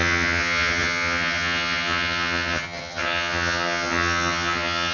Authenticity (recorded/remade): remade